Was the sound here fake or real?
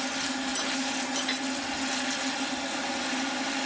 real